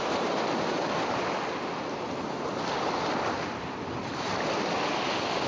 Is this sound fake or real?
real